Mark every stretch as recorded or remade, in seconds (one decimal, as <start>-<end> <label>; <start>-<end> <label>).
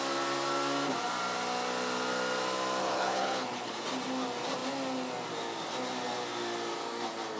0.0-2.8 recorded; 2.8-3.7 remade; 3.7-7.4 recorded